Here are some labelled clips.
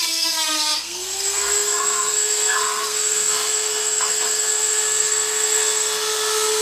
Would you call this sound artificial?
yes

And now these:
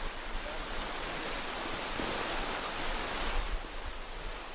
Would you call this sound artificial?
no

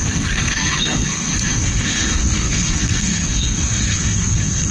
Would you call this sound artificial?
yes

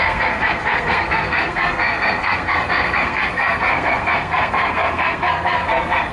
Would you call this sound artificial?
yes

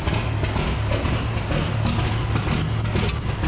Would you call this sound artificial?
no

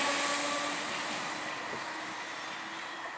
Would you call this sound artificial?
no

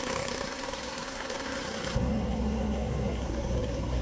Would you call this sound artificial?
yes